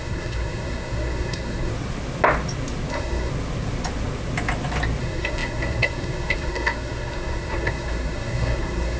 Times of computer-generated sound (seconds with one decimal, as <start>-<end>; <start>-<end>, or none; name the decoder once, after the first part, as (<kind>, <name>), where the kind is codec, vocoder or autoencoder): 0.0-1.7 (codec, SNAC); 2.9-3.3; 5.0-9.0